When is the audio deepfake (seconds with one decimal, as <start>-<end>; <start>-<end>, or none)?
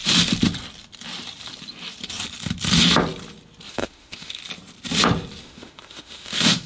3.7-4.4; 5.4-6.7